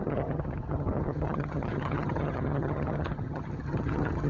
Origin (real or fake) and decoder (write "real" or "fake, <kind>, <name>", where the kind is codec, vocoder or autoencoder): fake, vocoder, HiFi-GAN